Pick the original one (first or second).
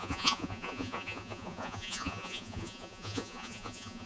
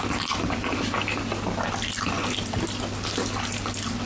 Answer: second